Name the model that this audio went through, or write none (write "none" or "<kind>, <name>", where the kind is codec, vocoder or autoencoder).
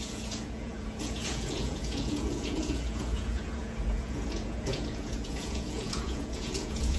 vocoder, Vocos